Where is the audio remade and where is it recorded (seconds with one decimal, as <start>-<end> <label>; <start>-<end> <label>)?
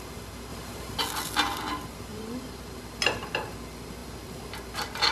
0.0-0.5 recorded; 0.5-1.0 remade; 1.0-2.1 recorded; 2.1-2.7 remade; 2.7-5.1 recorded